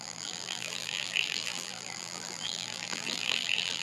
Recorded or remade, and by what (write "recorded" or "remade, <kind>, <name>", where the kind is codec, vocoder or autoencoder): remade, vocoder, BigVGAN v2